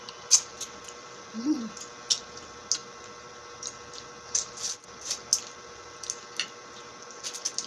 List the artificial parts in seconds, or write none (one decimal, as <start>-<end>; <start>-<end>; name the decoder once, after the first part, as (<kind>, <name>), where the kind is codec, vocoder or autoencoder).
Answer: none